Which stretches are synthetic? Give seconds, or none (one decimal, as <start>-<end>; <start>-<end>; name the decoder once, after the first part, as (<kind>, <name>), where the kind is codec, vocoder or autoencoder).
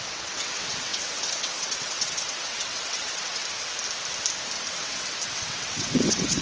0.0-3.4 (vocoder, WaveNeXt); 4.7-6.4